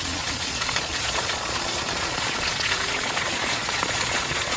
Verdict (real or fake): fake